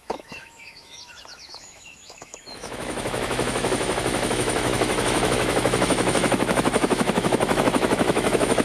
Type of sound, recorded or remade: remade